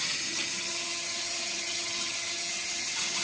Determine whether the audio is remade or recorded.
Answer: remade